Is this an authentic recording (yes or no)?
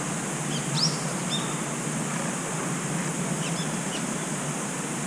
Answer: yes